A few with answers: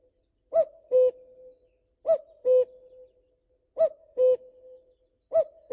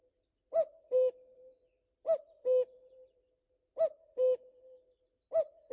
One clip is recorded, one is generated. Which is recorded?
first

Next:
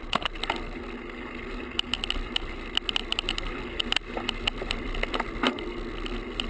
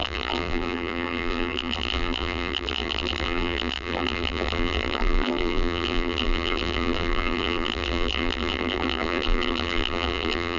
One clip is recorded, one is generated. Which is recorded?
first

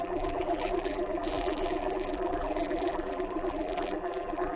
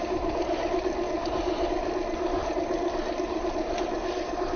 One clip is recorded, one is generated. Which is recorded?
second